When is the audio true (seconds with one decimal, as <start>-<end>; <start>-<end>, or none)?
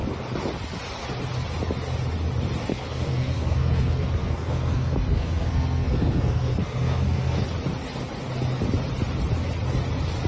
0.0-2.7; 7.4-10.3